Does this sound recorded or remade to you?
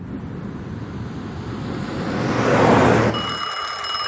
recorded